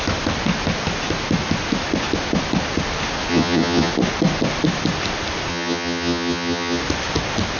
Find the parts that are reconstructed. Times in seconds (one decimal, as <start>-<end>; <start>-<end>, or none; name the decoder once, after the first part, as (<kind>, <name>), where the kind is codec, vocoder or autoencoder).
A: 3.3-3.9 (vocoder, HiFi-GAN); 5.5-6.8